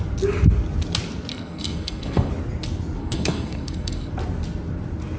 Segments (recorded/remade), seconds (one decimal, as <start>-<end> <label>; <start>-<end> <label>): 0.0-1.3 recorded; 1.3-2.3 remade; 2.3-3.0 recorded; 3.0-4.1 remade; 4.1-5.2 recorded